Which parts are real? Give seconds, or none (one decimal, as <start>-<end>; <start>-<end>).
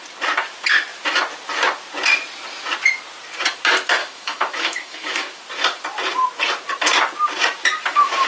0.0-4.0; 5.4-8.3